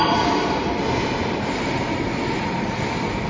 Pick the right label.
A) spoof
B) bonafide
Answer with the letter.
B